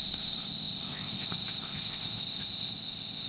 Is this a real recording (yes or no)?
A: no